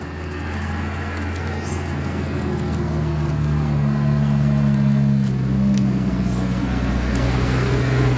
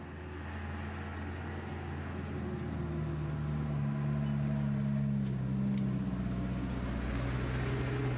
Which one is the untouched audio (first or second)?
second